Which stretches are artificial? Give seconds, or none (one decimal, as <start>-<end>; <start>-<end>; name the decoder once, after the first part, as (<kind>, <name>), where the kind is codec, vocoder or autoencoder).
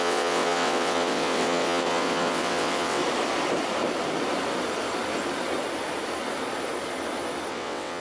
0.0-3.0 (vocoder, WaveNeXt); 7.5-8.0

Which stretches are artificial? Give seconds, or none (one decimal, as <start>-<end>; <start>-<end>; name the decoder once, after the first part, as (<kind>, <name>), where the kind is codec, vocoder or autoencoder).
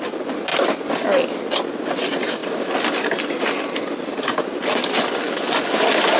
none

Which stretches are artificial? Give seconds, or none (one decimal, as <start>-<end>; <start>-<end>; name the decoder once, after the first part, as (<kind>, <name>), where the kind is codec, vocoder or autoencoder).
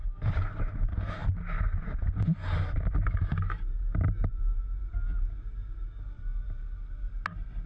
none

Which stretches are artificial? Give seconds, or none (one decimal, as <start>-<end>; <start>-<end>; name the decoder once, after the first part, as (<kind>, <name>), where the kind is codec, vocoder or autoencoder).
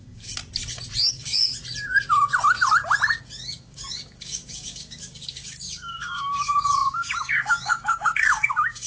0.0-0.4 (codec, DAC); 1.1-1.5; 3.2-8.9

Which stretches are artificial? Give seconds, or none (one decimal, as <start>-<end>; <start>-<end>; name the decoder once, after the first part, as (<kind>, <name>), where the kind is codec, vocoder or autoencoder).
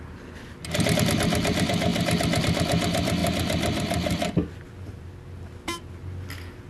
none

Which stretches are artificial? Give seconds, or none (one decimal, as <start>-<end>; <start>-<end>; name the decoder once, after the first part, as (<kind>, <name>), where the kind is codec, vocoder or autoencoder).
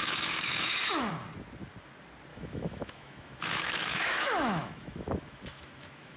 0.0-1.1 (autoencoder, DAC-VAE); 2.3-6.2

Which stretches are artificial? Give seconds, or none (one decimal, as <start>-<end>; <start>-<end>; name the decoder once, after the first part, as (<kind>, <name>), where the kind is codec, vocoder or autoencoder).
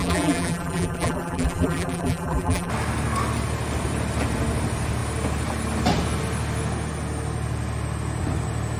0.0-2.7 (vocoder, BigVGAN v2)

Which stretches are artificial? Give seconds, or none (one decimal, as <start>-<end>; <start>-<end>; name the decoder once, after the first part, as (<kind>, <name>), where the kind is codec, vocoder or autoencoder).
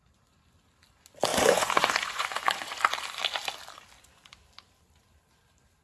1.3-2.8 (vocoder, Vocos)